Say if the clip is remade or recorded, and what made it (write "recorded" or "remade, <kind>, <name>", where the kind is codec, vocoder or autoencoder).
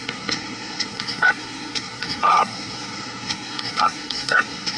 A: remade, codec, SNAC